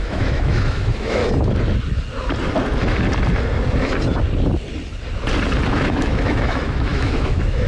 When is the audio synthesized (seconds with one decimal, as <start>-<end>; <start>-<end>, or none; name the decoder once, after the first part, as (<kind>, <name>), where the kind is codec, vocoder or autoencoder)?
0.0-1.2 (autoencoder, DAC-VAE); 5.7-7.7